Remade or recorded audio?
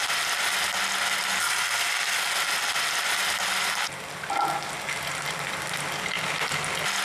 recorded